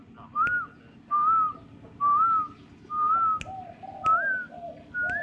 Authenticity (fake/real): real